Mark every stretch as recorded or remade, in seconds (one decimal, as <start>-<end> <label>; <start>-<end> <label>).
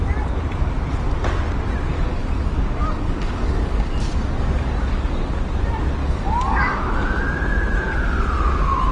0.0-1.9 recorded; 1.9-5.4 remade; 5.4-6.0 recorded; 6.0-7.2 remade; 7.2-8.9 recorded